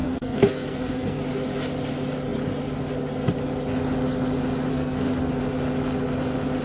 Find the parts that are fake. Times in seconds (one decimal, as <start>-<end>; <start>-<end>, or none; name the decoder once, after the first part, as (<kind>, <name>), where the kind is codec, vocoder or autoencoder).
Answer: 0.0-1.2 (codec, SNAC); 4.7-5.4